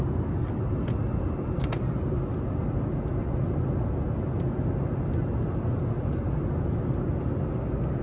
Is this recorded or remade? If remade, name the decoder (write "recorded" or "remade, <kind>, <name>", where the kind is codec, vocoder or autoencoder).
recorded